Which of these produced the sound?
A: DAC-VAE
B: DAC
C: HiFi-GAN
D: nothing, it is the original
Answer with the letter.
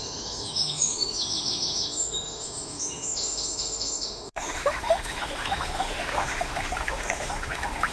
A